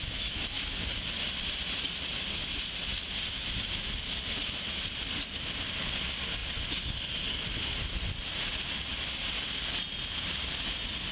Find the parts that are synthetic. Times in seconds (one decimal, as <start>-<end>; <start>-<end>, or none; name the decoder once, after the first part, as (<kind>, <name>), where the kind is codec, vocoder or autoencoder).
none